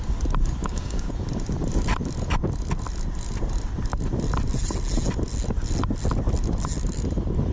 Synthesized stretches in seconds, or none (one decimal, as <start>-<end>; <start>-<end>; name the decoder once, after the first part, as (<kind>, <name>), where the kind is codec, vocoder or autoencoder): 0.6-1.1 (codec, DAC)